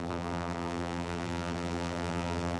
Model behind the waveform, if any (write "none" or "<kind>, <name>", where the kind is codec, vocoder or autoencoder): vocoder, BigVGAN v2